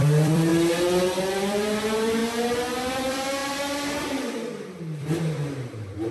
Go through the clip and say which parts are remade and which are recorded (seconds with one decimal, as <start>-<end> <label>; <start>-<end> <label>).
0.0-0.5 remade; 0.5-1.3 recorded; 1.3-2.2 remade; 2.2-2.9 recorded; 2.9-6.1 remade